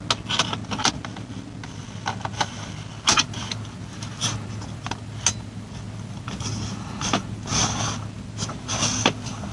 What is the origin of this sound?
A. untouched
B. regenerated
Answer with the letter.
A